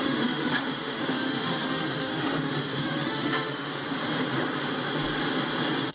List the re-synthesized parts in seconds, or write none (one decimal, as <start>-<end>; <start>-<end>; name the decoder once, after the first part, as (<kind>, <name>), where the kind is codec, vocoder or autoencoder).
0.0-3.8 (autoencoder, DAC-VAE)